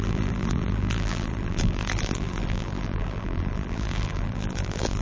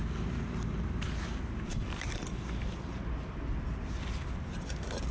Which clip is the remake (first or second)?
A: first